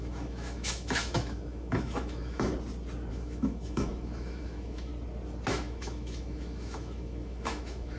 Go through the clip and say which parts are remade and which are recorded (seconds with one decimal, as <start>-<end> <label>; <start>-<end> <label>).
0.0-2.5 remade; 2.5-3.1 recorded; 3.1-4.9 remade; 4.9-5.5 recorded; 5.5-8.0 remade